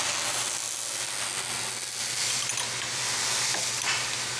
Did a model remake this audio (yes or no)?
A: no